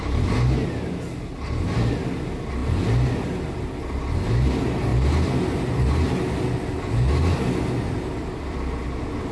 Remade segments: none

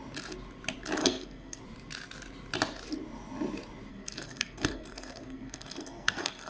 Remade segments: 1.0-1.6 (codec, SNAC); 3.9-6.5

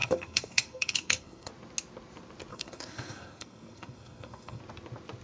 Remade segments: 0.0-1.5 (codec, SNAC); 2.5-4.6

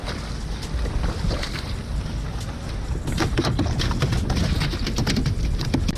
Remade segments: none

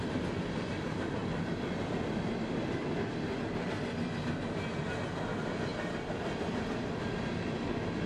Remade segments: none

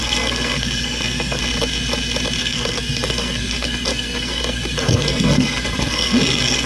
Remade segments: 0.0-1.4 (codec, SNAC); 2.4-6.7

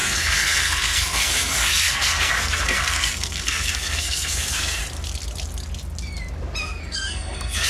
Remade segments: 0.0-4.8 (codec, SNAC); 6.6-7.7